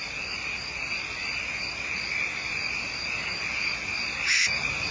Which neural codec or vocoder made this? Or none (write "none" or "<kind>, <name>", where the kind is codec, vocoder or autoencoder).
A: none